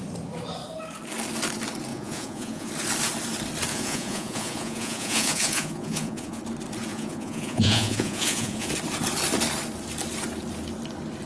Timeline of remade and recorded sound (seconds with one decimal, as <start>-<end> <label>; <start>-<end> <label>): 0.0-1.9 recorded; 1.9-2.7 remade; 2.7-3.7 recorded; 3.7-6.4 remade; 6.4-6.9 recorded; 6.9-8.7 remade; 8.7-11.3 recorded